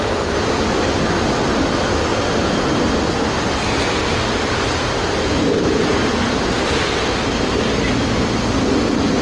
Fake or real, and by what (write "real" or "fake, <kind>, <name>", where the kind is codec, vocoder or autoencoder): real